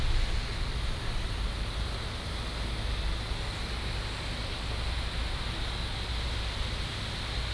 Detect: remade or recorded recorded